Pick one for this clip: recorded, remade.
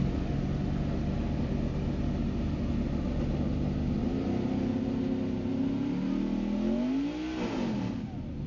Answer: recorded